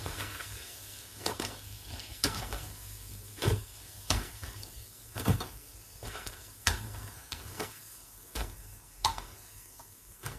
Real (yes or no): no